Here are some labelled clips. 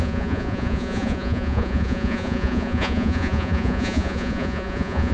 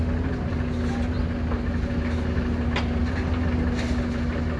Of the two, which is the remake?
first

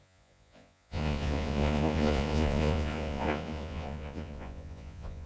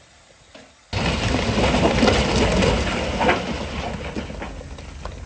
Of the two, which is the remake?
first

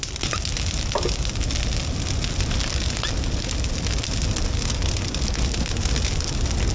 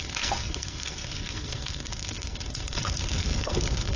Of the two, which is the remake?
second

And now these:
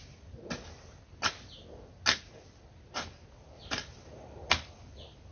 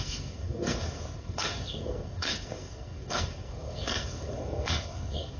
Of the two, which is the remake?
second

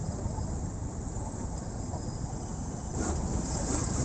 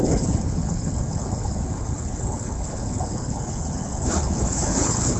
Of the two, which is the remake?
second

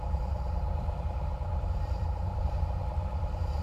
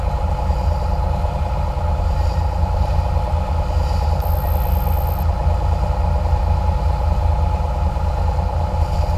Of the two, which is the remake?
first